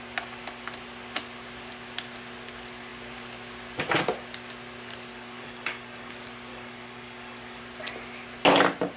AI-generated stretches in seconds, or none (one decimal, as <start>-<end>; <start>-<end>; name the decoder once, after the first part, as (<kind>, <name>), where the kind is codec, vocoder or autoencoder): 5.1-6.1 (codec, DAC); 6.5-7.6